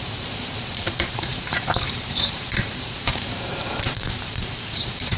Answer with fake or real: fake